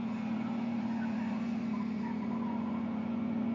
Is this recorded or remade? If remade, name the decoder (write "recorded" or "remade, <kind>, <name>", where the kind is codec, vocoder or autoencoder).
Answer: remade, vocoder, Vocos